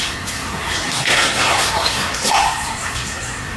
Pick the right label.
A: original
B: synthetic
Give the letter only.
B